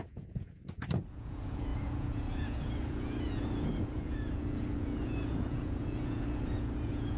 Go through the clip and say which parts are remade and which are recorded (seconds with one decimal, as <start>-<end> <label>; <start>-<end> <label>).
0.0-7.2 remade